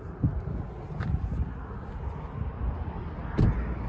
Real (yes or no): yes